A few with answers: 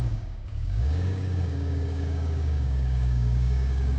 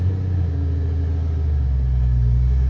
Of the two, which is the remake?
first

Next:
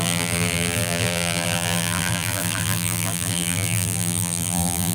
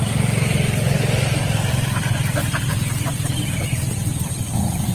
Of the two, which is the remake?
first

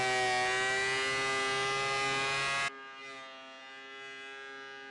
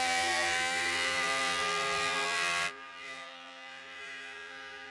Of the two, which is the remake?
second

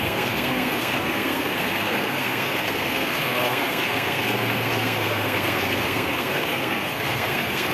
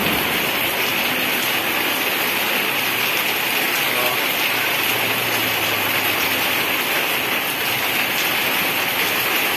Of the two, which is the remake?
first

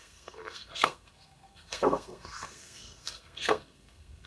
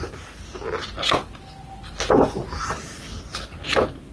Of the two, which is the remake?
first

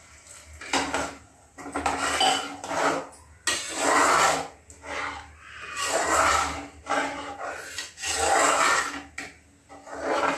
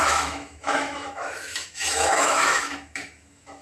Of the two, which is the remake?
second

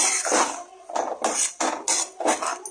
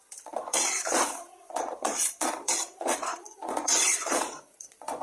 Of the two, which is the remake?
second